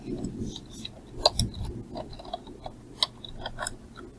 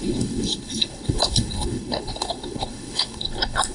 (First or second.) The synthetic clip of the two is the second